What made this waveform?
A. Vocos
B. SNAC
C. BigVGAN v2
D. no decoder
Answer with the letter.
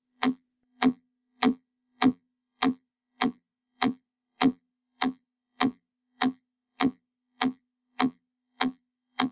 C